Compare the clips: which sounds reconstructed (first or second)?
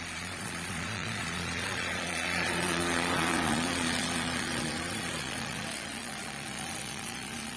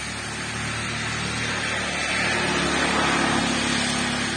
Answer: first